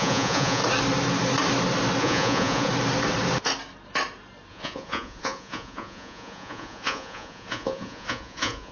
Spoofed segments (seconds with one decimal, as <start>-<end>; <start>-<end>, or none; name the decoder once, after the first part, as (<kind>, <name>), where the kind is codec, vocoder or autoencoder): 0.0-0.6 (vocoder, Vocos); 2.0-2.7; 4.5-8.7